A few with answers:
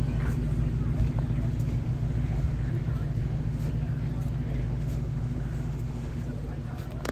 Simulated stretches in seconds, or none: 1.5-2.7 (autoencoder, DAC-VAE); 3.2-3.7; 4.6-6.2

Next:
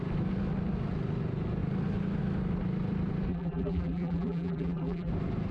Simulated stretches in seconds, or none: 3.3-5.1 (vocoder, BigVGAN v2)

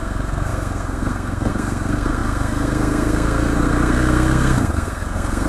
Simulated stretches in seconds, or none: 0.0-5.5 (codec, SNAC)

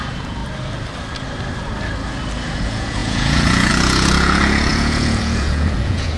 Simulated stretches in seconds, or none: 0.0-0.4 (vocoder, Vocos); 2.5-6.2